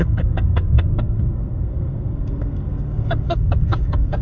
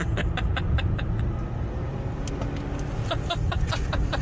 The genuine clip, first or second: second